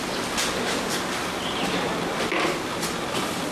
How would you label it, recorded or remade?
recorded